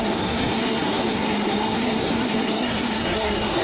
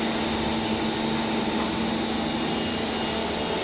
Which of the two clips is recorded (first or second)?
second